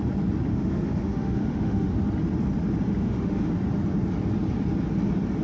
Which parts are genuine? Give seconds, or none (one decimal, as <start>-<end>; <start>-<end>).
0.0-0.5; 1.9-3.0; 3.5-5.4